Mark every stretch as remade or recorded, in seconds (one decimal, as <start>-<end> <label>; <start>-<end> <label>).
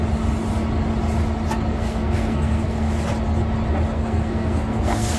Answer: 0.0-1.7 recorded; 1.7-2.9 remade; 2.9-3.9 recorded; 3.9-5.2 remade